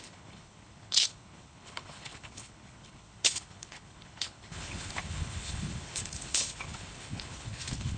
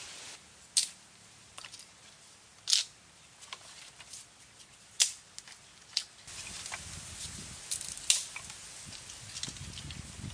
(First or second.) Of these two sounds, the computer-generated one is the first